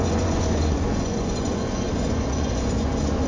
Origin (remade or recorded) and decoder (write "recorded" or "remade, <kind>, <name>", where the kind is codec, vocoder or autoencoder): remade, vocoder, Vocos